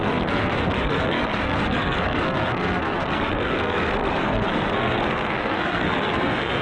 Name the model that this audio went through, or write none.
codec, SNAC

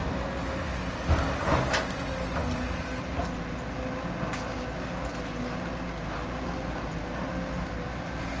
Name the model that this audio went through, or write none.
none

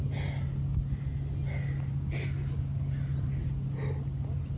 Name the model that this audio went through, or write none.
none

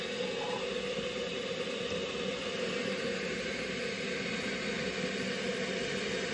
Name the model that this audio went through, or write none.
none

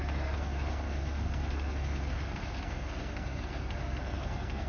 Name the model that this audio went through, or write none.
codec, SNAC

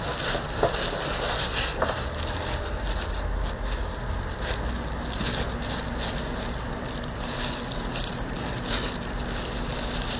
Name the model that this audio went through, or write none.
none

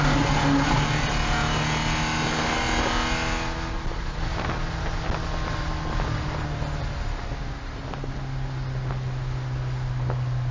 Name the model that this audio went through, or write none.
none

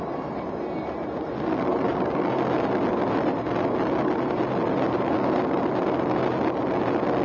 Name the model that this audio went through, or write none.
none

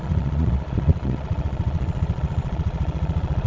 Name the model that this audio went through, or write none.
vocoder, Vocos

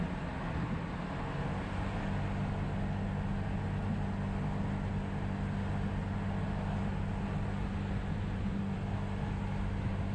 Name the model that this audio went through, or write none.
none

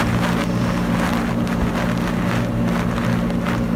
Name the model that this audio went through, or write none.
none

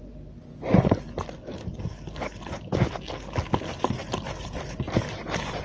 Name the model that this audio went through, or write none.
none